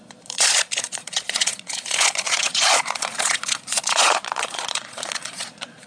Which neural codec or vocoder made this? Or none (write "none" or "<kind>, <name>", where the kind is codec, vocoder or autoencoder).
vocoder, Vocos